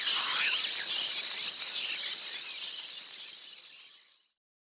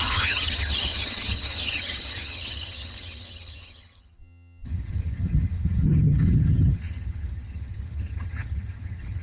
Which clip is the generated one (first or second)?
second